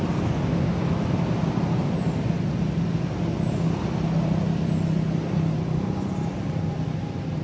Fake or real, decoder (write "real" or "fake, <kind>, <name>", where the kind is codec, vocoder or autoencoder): real